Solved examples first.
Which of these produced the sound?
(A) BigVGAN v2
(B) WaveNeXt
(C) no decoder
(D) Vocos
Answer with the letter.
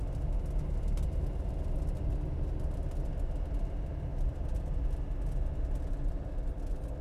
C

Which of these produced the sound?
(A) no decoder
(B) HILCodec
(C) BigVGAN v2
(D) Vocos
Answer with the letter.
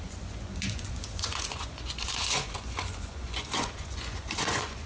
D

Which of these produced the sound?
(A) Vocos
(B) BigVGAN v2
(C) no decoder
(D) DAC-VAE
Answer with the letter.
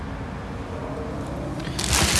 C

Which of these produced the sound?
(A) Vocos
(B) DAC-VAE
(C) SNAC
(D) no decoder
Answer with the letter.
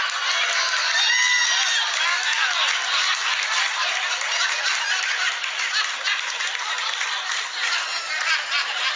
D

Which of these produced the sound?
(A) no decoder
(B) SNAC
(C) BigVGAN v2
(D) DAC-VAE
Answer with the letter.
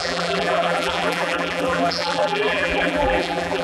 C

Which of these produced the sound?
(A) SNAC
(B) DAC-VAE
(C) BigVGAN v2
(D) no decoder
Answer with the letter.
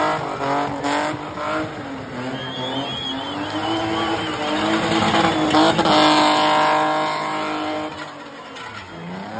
D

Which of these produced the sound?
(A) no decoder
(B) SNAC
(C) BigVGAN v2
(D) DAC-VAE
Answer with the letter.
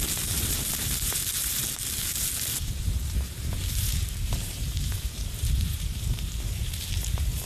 C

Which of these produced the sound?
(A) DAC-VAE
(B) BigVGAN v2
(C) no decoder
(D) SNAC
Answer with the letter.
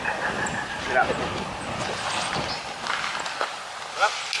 C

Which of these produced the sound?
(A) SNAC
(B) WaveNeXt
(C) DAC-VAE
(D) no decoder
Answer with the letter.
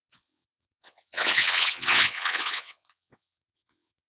B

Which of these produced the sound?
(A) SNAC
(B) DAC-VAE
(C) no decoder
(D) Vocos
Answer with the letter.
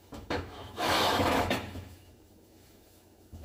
B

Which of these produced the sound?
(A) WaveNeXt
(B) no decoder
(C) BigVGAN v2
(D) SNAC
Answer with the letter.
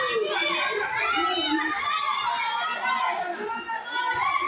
B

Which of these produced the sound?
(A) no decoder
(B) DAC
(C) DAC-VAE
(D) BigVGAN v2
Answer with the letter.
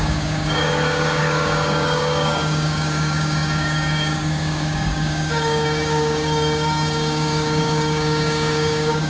B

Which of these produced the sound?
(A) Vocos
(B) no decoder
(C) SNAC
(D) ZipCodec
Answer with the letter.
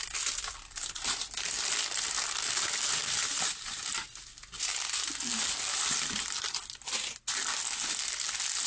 B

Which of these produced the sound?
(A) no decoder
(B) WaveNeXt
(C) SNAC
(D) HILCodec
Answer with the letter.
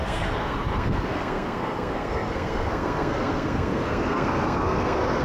C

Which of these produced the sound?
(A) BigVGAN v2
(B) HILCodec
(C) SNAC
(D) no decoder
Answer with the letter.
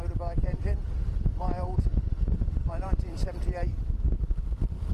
A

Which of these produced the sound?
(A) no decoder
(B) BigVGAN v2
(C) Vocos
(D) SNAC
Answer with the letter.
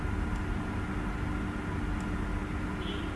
A